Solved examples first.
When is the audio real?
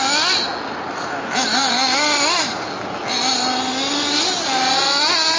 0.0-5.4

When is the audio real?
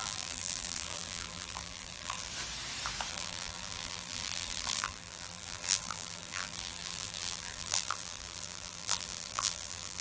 2.3-3.1